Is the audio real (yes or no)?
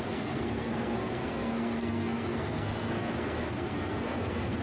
no